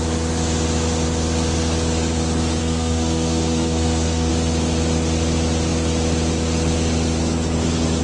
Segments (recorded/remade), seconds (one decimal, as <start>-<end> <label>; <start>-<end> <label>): 0.0-2.6 recorded; 2.6-4.3 remade; 4.3-8.0 recorded